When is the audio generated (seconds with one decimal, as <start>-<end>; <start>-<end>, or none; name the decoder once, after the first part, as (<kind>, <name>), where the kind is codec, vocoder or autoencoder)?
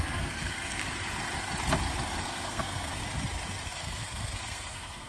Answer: 0.0-0.8 (codec, SNAC); 2.2-3.0; 3.7-5.1